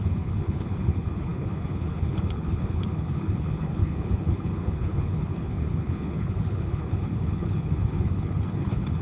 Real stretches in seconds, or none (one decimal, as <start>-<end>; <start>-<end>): none